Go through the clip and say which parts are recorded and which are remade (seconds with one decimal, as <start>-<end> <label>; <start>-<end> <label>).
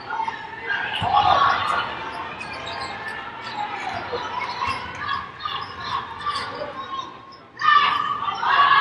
0.0-8.8 recorded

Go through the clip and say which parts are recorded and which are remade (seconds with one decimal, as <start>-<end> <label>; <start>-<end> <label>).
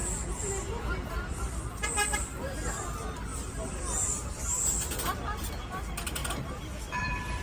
0.0-0.8 recorded; 0.8-6.2 remade; 6.2-7.0 recorded; 7.0-7.4 remade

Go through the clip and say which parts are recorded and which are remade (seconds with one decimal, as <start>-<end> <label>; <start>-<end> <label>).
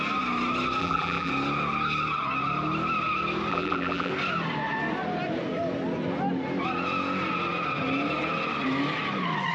0.0-0.8 recorded; 0.8-1.3 remade; 1.3-3.5 recorded; 3.5-4.1 remade; 4.1-9.5 recorded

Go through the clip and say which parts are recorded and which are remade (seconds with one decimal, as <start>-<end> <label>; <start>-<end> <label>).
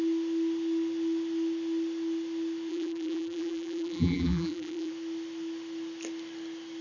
0.0-2.7 recorded; 2.7-4.9 remade; 4.9-6.8 recorded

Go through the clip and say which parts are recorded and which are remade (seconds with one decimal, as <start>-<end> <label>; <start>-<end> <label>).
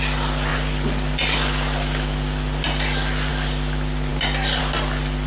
0.0-5.3 recorded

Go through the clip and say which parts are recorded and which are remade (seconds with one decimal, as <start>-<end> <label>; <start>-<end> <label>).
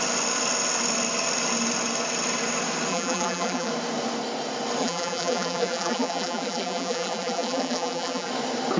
0.0-2.9 recorded; 2.9-3.7 remade; 3.7-4.8 recorded; 4.8-8.3 remade; 8.3-8.8 recorded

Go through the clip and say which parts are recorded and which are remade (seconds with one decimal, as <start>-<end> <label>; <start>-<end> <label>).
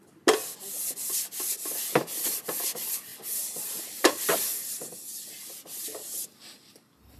0.0-7.2 recorded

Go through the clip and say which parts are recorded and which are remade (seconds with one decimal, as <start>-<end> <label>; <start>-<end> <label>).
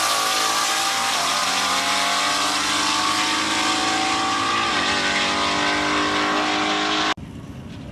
0.0-7.9 recorded